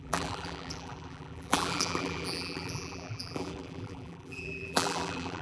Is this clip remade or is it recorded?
remade